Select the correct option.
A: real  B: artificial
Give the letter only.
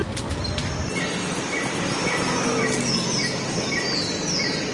A